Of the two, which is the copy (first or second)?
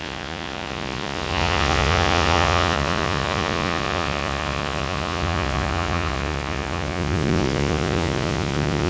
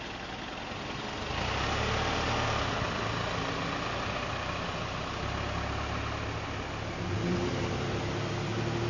first